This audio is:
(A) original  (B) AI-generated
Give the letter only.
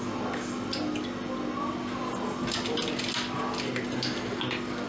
A